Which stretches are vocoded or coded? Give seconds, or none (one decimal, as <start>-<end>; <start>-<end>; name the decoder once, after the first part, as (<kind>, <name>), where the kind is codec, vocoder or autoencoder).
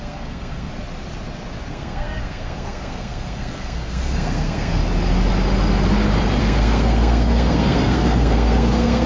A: 0.0-0.7 (codec, SNAC); 1.7-4.8; 6.4-9.1